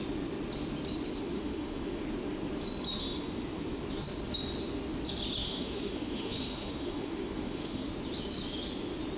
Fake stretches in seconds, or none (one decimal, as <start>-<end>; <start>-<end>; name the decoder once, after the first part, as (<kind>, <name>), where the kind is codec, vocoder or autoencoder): 1.3-2.0 (autoencoder, DAC-VAE); 5.4-7.9